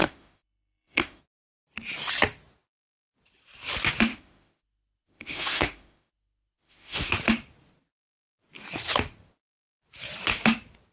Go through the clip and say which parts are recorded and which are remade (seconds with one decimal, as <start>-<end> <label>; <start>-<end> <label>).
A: 0.0-1.2 remade; 1.2-4.1 recorded; 4.1-7.1 remade; 7.1-10.9 recorded